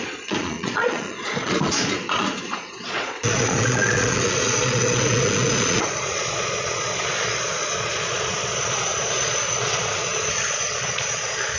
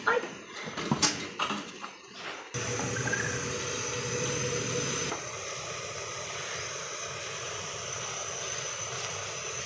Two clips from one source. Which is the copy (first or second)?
first